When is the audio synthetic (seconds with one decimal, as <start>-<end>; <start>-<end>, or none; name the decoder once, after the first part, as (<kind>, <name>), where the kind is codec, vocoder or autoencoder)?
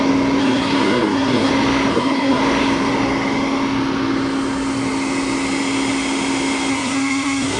0.4-1.5 (codec, SNAC); 1.9-2.4; 6.7-7.6